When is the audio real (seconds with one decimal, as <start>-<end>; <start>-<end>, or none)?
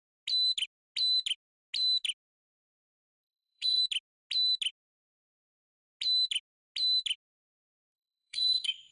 0.0-2.7; 3.8-7.9